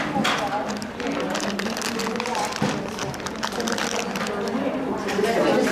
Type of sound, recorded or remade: recorded